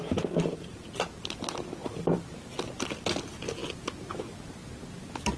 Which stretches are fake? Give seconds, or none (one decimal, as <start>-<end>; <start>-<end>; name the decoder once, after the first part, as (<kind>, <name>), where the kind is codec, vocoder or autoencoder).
none